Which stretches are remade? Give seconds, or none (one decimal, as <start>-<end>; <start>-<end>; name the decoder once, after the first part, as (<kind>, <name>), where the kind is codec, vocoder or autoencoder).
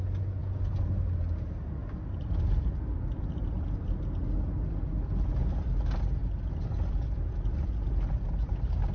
none